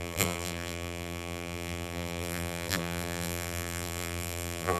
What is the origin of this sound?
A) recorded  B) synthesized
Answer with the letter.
B